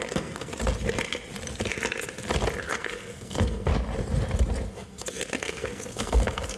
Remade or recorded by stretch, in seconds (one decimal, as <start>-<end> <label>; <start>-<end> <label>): 0.0-0.5 remade; 0.5-2.6 recorded; 2.6-3.7 remade; 3.7-4.7 recorded; 4.7-6.6 remade